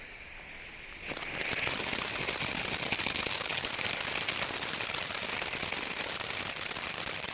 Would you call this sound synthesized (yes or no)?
no